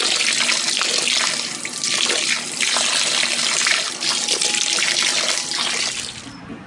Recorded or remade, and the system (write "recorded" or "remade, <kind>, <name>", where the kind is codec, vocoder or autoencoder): recorded